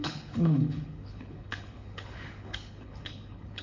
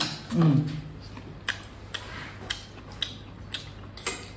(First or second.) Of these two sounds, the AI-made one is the first